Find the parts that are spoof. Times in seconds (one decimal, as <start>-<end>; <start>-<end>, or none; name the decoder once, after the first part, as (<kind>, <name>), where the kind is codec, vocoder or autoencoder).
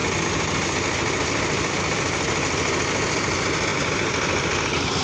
none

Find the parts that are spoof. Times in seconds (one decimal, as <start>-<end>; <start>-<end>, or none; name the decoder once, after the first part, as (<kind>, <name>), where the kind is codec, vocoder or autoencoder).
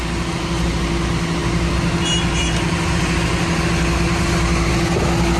none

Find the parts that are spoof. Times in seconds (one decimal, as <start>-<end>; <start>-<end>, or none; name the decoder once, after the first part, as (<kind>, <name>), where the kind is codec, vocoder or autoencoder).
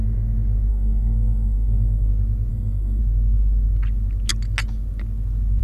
0.7-2.1 (codec, SNAC); 2.5-3.0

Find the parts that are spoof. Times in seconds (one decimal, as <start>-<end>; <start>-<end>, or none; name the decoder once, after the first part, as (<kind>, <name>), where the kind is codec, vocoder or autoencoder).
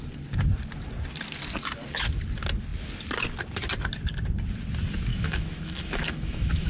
5.1-6.7 (autoencoder, DAC-VAE)